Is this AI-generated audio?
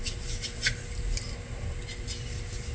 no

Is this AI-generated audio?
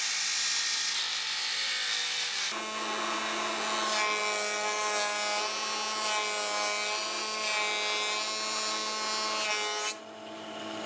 no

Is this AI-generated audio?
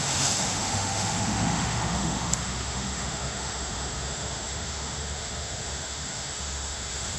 yes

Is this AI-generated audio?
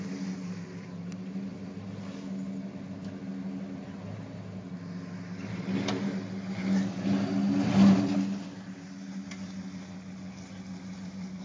no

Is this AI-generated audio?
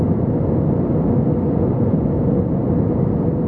no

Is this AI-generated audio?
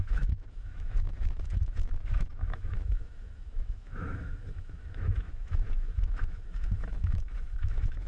yes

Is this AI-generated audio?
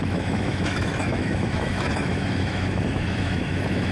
yes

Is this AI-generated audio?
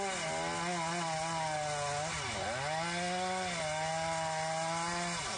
no